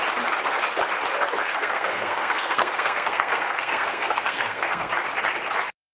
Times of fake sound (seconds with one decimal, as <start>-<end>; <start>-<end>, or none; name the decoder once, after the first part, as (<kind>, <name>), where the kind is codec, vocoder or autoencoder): 1.4-4.9 (codec, SNAC)